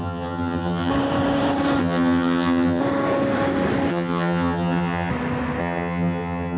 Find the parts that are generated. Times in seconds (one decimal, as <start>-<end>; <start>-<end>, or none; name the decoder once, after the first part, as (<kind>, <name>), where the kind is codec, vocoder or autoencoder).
0.0-0.9 (vocoder, HiFi-GAN); 1.8-2.8; 3.9-5.1; 5.6-6.6